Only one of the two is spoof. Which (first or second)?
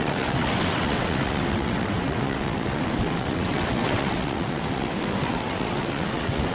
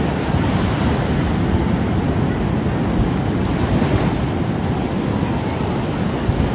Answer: first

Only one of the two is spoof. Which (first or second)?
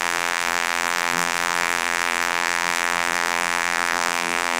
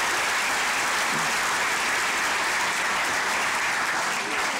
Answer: first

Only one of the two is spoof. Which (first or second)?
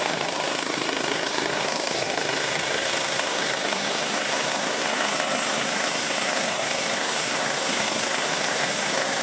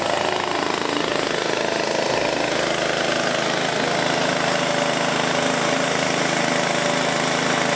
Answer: first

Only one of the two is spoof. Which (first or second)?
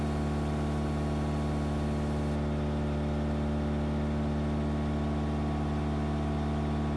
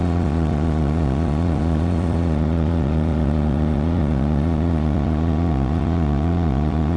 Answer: second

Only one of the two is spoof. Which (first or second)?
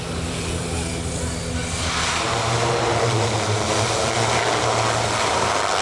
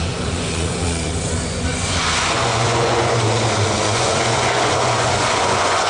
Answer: second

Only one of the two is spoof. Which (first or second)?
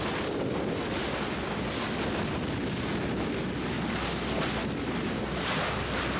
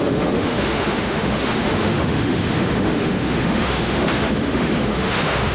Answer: second